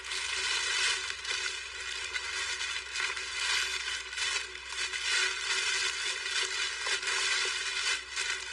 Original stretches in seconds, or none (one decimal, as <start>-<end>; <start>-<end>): 0.0-8.5